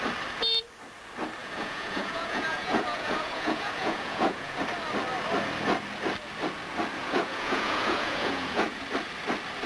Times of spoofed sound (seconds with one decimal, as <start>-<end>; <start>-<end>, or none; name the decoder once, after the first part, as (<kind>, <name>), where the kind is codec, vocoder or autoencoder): 1.4-4.6 (vocoder, Vocos); 7.0-8.8